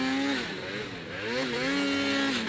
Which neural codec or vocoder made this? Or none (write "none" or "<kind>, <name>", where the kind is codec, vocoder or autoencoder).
none